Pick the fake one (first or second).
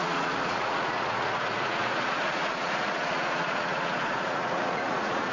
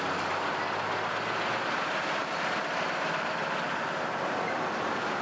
first